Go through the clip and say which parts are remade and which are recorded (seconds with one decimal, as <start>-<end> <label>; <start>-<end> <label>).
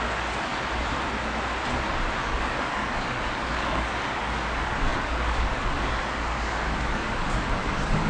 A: 0.0-0.5 remade; 0.5-2.2 recorded; 2.2-8.1 remade